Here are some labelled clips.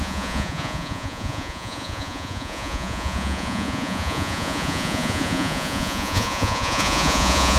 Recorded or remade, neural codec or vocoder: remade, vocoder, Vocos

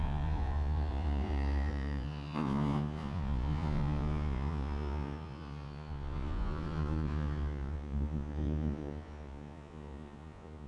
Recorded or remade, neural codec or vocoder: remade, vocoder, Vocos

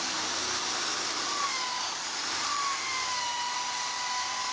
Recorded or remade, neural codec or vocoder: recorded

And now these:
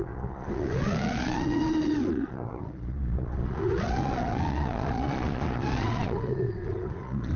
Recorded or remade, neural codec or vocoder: remade, vocoder, Vocos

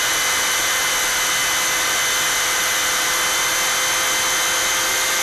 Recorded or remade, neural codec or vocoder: recorded